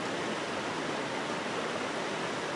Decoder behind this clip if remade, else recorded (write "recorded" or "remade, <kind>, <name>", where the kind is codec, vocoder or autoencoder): recorded